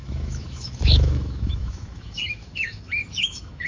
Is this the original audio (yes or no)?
no